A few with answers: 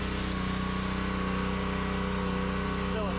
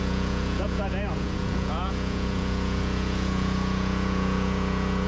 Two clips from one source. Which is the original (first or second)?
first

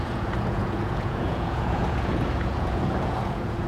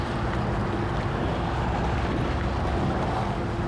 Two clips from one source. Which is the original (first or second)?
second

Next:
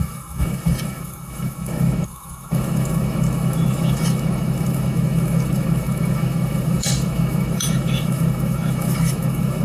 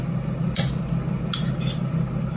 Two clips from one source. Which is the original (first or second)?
second